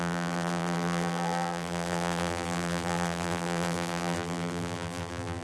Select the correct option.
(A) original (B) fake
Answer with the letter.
B